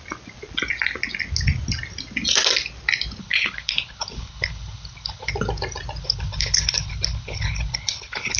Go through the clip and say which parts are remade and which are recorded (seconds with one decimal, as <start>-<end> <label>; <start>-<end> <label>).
0.0-3.2 recorded; 3.2-5.3 remade; 5.3-6.0 recorded; 6.0-8.4 remade